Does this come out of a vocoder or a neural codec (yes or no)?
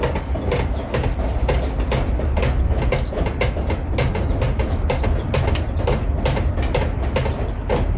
no